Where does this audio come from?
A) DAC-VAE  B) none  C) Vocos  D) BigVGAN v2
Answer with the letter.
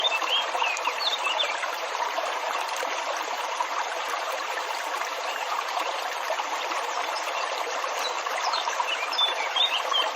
D